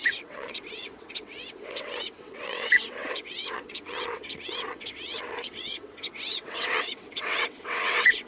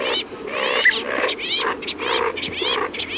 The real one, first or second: second